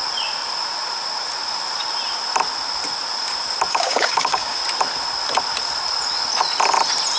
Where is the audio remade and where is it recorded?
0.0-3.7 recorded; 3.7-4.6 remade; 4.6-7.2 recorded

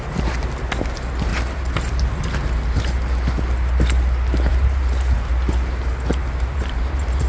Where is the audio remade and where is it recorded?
0.0-1.3 recorded; 1.3-3.0 remade; 3.0-4.5 recorded; 4.5-5.3 remade; 5.3-6.2 recorded; 6.2-7.3 remade

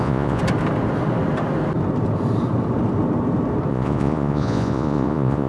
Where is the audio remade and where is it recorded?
0.0-0.4 remade; 0.4-3.7 recorded; 3.7-5.5 remade